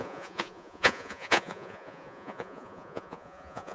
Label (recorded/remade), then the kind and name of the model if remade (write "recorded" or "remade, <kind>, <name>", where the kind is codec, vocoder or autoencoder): remade, vocoder, Vocos